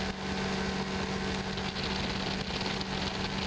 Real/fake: real